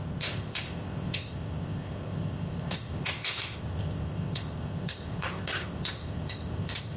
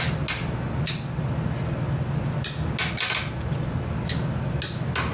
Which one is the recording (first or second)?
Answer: second